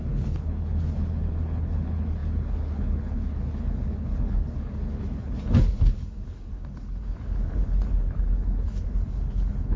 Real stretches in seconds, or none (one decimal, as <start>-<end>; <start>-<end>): none